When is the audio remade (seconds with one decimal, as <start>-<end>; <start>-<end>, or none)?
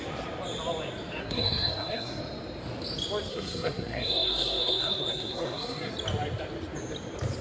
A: 1.2-2.2; 3.3-5.9